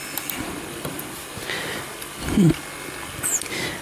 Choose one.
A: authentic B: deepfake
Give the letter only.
A